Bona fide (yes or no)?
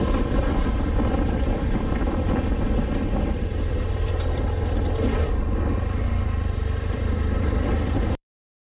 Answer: no